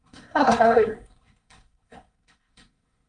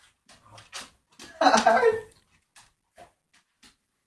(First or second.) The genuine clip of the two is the second